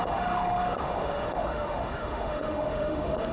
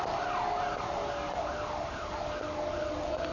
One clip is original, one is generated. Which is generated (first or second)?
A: first